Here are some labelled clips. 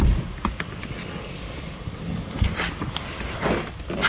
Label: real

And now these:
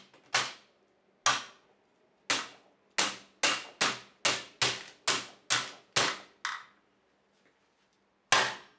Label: real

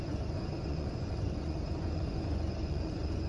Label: fake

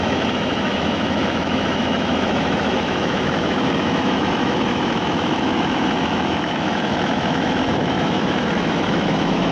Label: fake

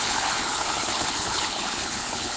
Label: fake